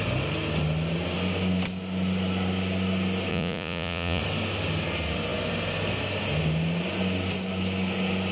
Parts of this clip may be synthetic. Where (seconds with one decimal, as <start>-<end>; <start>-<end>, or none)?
3.3-4.2

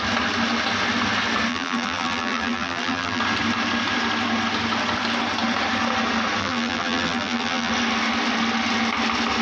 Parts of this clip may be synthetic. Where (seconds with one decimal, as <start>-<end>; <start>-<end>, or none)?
1.5-3.2; 6.4-7.7

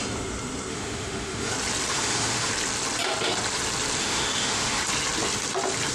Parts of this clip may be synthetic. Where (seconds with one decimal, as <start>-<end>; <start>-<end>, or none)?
0.7-1.5; 1.9-2.5; 4.0-4.8

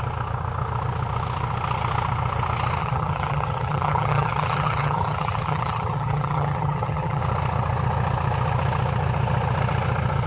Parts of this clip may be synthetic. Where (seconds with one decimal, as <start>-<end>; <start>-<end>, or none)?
2.8-7.2

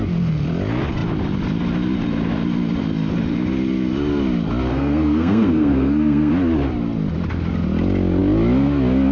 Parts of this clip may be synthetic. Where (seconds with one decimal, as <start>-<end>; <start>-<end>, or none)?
4.7-6.3

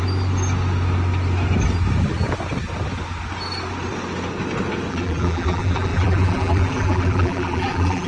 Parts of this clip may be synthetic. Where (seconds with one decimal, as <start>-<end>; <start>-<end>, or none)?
4.9-8.1